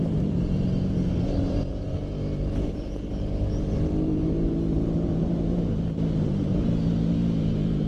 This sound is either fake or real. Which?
fake